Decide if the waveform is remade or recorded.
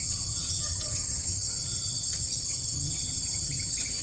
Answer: remade